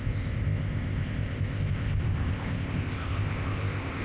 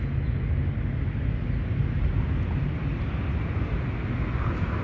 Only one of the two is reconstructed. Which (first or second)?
first